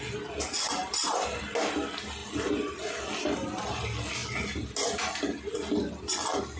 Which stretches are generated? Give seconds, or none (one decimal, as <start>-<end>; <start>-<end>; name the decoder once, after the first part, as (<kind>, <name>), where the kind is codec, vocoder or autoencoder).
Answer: 0.8-1.4 (vocoder, BigVGAN v2)